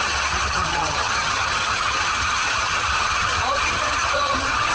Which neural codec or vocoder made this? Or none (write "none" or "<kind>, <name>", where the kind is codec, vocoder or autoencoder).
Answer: vocoder, HiFi-GAN